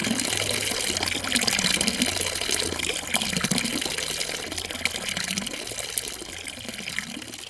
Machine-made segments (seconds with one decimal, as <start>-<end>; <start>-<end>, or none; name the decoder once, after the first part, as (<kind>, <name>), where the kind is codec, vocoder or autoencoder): none